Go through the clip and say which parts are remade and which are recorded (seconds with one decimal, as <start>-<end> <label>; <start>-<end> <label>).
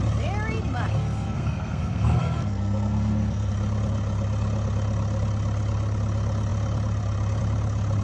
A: 0.0-0.9 recorded; 0.9-3.5 remade; 3.5-8.0 recorded